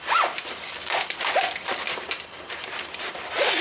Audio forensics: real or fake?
real